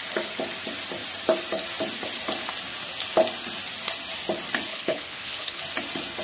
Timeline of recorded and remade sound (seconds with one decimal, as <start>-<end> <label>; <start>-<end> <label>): 0.0-4.7 recorded; 4.7-5.6 remade; 5.6-6.2 recorded